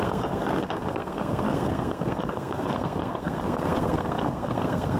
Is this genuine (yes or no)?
no